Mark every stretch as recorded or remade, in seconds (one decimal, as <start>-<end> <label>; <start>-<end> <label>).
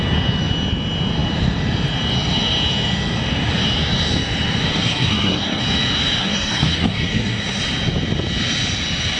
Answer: 0.0-4.7 recorded; 4.7-5.6 remade; 5.6-6.2 recorded; 6.2-7.6 remade; 7.6-9.2 recorded